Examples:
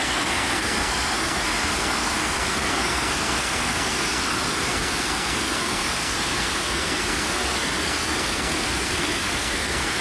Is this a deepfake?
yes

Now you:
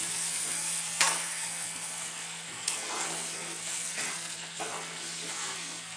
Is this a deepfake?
yes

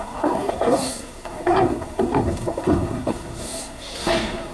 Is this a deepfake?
yes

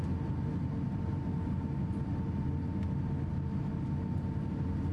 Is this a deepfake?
no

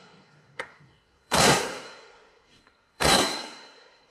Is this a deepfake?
yes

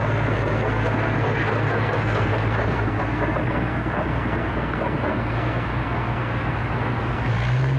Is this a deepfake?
yes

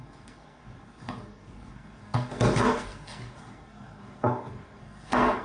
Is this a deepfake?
yes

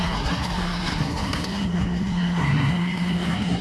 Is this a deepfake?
yes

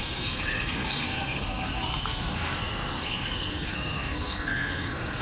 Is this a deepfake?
yes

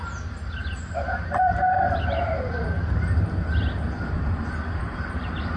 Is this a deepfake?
no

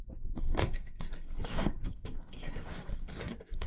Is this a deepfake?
yes